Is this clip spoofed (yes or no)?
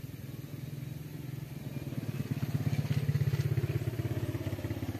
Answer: no